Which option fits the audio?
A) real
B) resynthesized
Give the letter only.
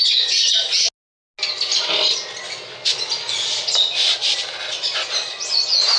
A